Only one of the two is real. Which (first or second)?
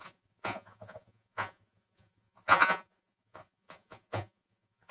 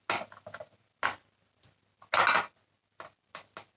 second